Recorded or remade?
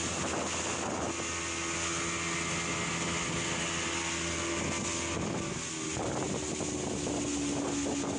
recorded